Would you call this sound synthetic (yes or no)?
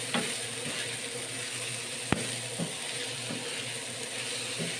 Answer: no